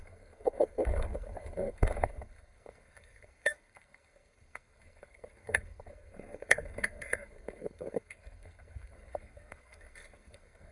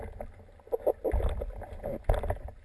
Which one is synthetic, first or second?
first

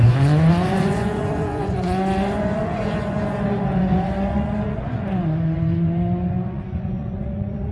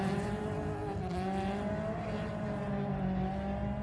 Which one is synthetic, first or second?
first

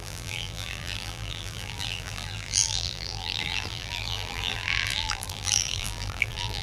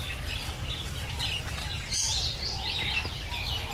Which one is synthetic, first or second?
first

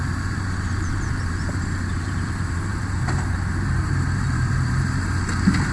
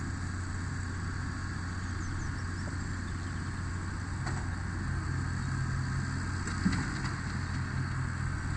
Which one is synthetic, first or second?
first